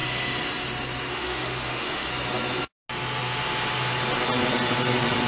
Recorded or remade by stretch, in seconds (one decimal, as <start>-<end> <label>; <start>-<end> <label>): 0.0-1.1 recorded; 1.1-2.1 remade; 2.1-5.3 recorded